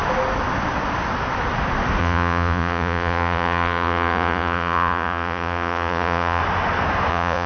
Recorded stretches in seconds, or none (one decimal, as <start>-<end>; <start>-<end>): 0.0-2.0; 6.4-7.1